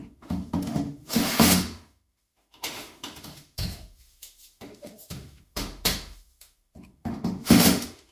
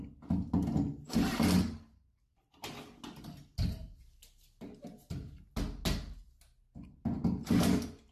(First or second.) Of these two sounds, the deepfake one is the first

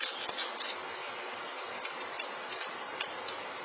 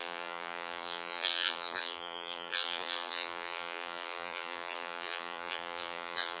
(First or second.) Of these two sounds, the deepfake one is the second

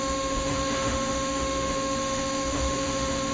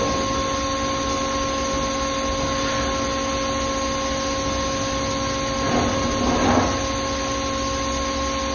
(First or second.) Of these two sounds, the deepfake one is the first